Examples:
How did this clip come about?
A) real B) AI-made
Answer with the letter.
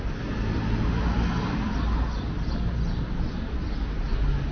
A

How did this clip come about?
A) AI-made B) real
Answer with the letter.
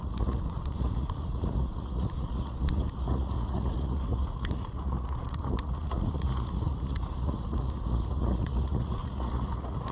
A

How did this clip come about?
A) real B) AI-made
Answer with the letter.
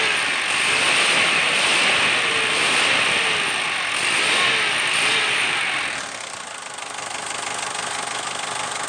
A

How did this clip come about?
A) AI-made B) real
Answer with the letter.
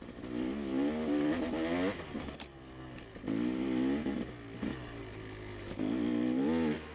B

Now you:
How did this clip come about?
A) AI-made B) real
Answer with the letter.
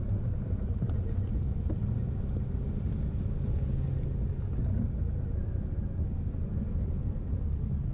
B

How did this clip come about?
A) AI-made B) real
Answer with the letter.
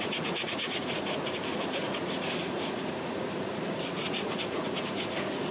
A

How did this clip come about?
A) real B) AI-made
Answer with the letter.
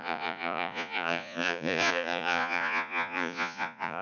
B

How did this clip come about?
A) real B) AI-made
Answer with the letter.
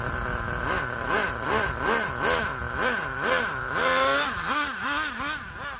A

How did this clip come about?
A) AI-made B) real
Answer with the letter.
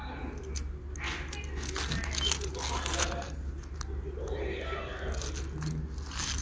B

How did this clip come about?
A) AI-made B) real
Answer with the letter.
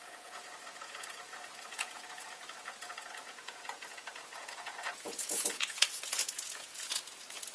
A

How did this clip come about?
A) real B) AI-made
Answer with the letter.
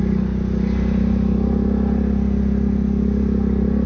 A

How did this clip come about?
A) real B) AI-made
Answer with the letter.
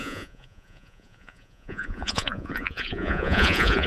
B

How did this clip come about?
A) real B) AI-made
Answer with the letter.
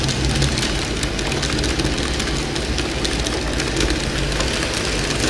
A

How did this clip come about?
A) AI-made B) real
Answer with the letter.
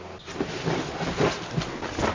B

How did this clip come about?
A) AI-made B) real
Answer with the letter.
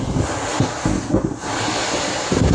B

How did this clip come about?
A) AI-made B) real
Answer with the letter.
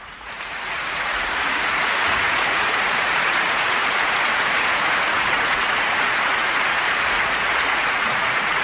A